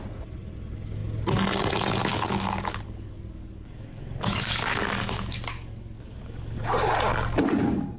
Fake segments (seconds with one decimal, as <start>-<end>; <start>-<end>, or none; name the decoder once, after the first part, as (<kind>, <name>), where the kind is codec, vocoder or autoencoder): 2.1-6.6 (codec, DAC)

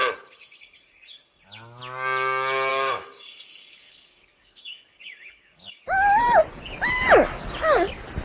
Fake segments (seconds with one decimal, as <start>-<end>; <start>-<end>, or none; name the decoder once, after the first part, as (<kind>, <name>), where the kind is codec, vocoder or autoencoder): 0.0-1.8 (codec, DAC); 2.7-5.8

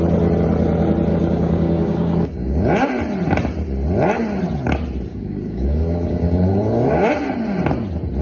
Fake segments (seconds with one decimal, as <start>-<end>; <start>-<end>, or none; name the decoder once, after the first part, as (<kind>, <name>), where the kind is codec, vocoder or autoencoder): 1.1-2.9 (codec, DAC); 5.1-7.1

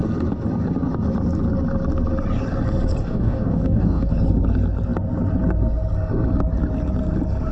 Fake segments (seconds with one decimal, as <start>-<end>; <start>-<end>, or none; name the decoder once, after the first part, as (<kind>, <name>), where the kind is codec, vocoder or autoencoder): 3.0-4.1 (codec, DAC)

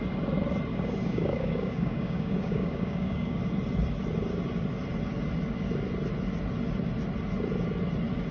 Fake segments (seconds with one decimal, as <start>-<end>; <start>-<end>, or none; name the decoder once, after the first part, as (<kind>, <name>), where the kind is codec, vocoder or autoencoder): 0.7-3.4 (codec, DAC)

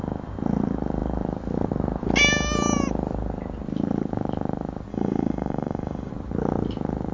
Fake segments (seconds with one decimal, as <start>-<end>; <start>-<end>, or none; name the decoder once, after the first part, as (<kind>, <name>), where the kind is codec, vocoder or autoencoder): 4.9-6.1 (codec, DAC)

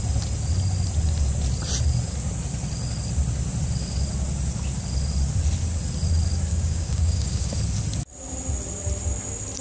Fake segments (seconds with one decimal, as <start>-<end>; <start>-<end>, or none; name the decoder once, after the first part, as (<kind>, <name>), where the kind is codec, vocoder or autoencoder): 6.5-7.5 (codec, DAC)

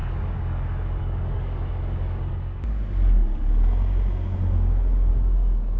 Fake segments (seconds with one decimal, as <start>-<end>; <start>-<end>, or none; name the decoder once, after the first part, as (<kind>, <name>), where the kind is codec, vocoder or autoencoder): 0.0-3.5 (codec, DAC); 5.1-5.8